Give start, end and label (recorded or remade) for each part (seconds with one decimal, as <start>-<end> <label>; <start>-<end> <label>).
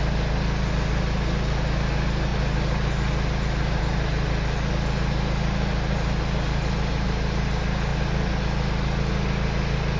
0.0-10.0 recorded